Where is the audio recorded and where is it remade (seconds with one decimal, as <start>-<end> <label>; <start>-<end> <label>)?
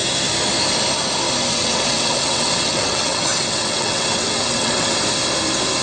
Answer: 0.0-1.5 recorded; 1.5-5.0 remade; 5.0-5.8 recorded